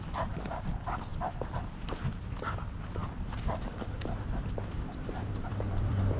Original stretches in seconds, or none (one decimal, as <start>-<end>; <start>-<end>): none